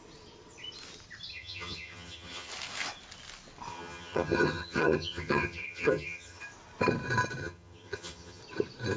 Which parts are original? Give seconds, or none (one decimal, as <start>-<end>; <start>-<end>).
0.0-1.3; 2.5-3.7; 6.4-7.4; 8.4-9.0